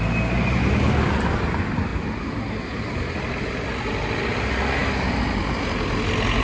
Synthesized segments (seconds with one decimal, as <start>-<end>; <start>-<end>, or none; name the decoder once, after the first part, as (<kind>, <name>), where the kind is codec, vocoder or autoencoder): none